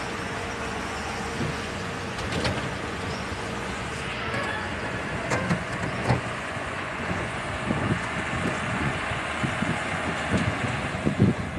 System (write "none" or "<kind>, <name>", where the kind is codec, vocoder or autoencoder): vocoder, Vocos